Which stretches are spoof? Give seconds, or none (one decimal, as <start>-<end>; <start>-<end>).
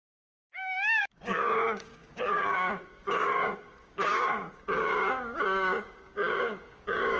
0.0-7.2